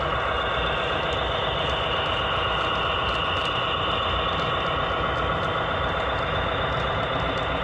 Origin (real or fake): real